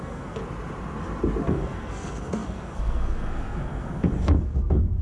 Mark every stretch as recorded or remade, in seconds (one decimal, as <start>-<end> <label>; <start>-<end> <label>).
0.0-0.4 remade; 0.4-1.5 recorded; 1.5-5.0 remade